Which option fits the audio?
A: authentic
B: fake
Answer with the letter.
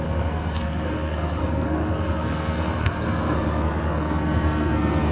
B